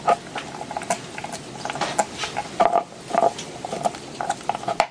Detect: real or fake real